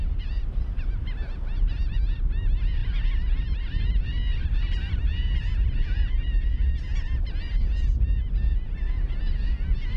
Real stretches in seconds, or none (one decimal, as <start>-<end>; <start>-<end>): 0.0-10.0